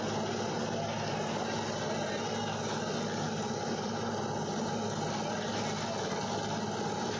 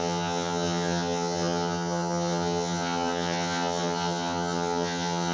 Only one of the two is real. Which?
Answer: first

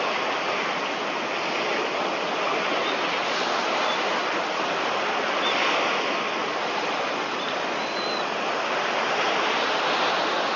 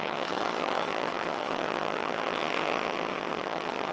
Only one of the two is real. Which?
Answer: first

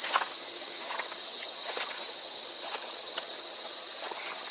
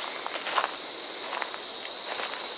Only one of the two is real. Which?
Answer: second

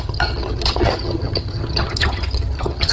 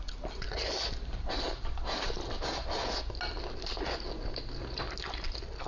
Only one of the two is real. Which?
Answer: second